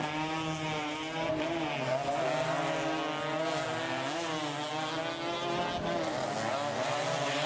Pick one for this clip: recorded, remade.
recorded